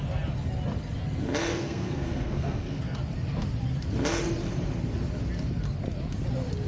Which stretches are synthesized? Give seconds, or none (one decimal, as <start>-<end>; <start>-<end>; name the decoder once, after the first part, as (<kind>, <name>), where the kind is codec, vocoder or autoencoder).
1.5-2.8 (codec, SNAC)